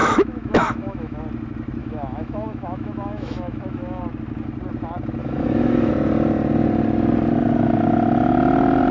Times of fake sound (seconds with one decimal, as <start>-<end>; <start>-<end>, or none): 0.0-1.2; 1.8-4.0; 5.2-5.9